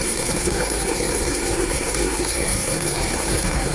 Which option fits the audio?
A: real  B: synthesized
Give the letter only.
B